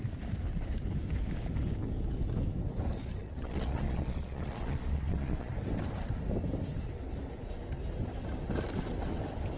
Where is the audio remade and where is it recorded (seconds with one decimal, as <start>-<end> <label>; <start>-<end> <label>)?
0.0-3.2 recorded; 3.2-5.5 remade; 5.5-9.6 recorded